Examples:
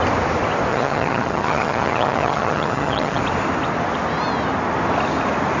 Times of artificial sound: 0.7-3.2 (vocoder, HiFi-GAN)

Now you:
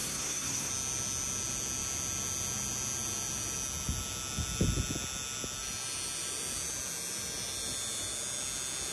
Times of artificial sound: 0.0-0.7 (codec, SNAC)

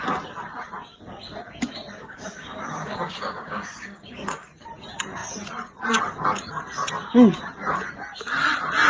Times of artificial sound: 2.0-4.5 (codec, DAC)

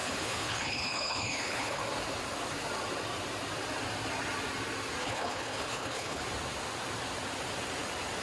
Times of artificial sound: 0.0-1.8 (codec, HILCodec); 5.0-6.2

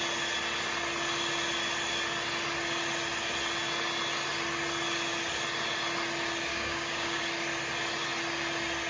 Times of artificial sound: 6.5-7.2 (codec, DAC)

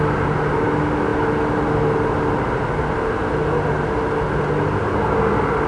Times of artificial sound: none